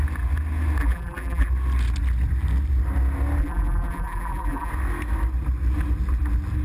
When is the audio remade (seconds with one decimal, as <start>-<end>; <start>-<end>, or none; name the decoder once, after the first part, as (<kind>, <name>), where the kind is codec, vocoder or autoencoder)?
0.8-1.5 (vocoder, BigVGAN v2); 3.4-4.7